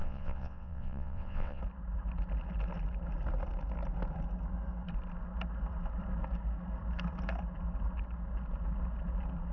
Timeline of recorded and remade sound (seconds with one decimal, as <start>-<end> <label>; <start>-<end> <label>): 0.0-1.6 remade; 1.6-9.5 recorded